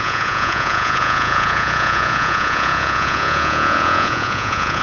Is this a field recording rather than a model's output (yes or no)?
no